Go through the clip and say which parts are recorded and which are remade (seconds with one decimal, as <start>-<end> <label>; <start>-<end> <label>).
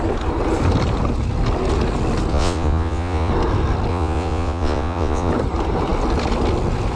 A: 0.0-2.3 recorded; 2.3-3.3 remade; 3.3-3.9 recorded; 3.9-5.3 remade; 5.3-7.0 recorded